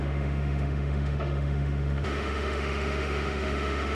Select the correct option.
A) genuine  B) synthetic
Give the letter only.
B